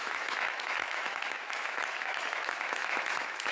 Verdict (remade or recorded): remade